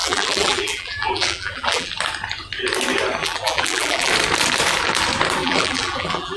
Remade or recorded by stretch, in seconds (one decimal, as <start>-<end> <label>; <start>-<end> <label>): 0.0-1.9 remade; 1.9-3.2 recorded; 3.2-4.1 remade; 4.1-5.4 recorded; 5.4-6.4 remade